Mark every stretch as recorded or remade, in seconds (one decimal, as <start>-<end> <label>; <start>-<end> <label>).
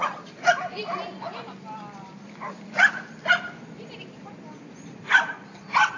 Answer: 0.0-6.0 recorded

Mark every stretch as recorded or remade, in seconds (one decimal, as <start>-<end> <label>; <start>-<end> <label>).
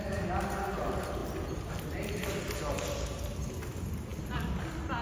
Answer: 0.0-5.0 recorded